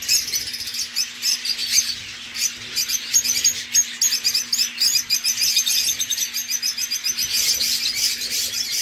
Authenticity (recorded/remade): recorded